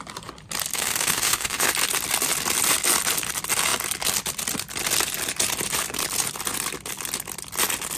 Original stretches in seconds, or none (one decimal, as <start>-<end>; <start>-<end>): 0.0-0.7; 1.7-8.0